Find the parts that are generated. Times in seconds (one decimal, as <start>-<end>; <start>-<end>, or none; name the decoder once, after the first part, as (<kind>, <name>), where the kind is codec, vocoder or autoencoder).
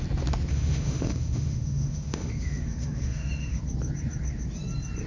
0.5-3.6 (autoencoder, DAC-VAE)